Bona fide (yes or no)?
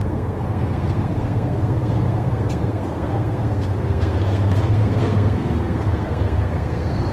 no